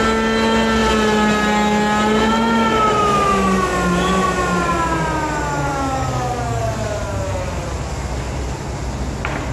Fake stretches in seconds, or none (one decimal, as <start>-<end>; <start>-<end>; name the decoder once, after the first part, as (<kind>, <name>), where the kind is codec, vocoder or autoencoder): 5.7-6.6 (codec, DAC)